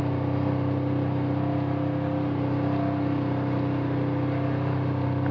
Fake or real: real